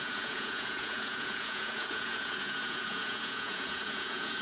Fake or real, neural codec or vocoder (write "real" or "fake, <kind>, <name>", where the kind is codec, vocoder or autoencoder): fake, vocoder, Vocos